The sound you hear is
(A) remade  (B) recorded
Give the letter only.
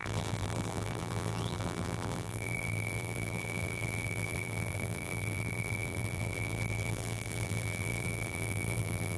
A